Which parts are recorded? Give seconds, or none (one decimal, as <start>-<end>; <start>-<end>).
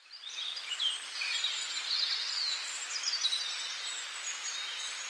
0.0-5.1